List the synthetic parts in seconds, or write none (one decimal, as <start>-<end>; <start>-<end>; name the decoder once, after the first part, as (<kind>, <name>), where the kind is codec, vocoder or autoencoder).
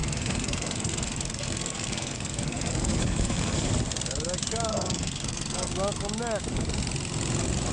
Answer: 0.0-3.7 (codec, SNAC); 4.7-5.7